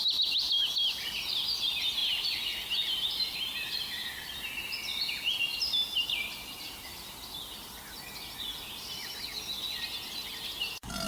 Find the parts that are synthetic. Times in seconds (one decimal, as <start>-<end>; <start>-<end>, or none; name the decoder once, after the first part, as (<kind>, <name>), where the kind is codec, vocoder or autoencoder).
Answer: none